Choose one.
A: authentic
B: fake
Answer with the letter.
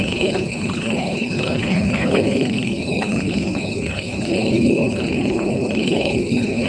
B